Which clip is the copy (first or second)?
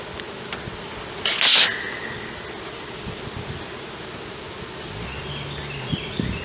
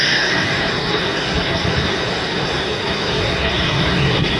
second